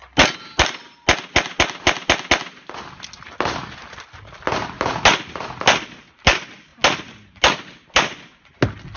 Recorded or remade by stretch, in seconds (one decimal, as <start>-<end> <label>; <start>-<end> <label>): 0.0-9.0 recorded